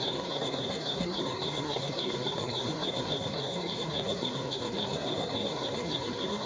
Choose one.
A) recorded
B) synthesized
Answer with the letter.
B